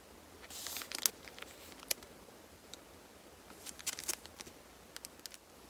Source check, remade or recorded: recorded